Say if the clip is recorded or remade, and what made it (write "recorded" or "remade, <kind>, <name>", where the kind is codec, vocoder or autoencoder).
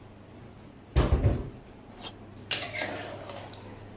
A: recorded